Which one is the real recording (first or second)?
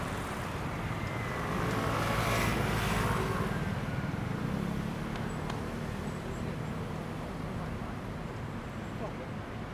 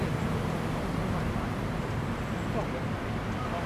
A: first